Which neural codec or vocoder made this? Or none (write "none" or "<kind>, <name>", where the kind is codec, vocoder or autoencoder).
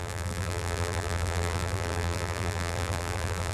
vocoder, BigVGAN v2